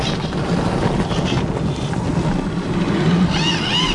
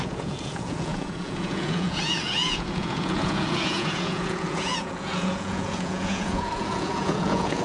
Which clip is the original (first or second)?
first